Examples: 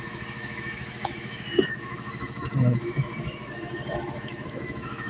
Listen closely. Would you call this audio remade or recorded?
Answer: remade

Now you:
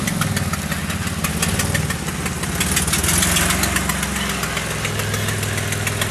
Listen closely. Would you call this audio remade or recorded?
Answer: recorded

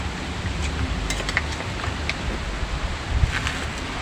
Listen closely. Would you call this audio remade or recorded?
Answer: recorded